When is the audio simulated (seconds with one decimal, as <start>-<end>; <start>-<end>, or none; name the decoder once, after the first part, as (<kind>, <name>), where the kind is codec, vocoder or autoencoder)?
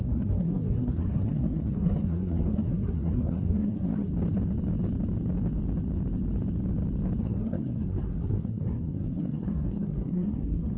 0.0-4.1 (codec, SNAC); 7.2-10.8